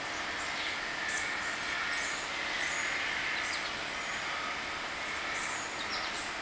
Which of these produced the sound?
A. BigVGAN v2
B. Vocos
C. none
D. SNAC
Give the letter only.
C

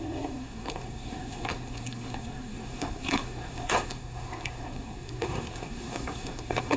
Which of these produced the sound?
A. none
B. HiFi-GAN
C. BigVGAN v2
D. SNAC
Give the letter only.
D